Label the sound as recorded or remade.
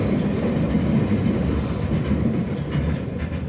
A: recorded